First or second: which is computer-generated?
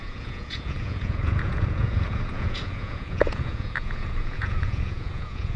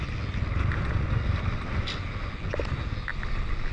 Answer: first